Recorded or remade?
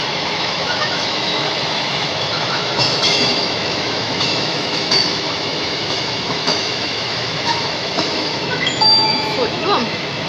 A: remade